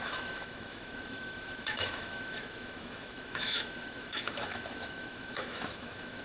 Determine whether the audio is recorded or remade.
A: remade